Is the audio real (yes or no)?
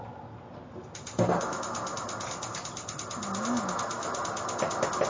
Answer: yes